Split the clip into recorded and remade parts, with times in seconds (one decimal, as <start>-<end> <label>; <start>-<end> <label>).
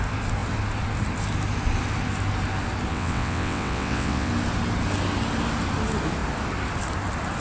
0.0-2.9 recorded; 2.9-4.3 remade; 4.3-7.4 recorded